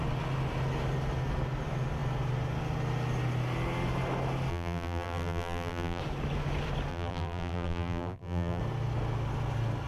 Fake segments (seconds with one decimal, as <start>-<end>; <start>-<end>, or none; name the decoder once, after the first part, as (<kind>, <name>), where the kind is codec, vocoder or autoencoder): 4.5-6.0 (vocoder, BigVGAN v2); 6.9-8.6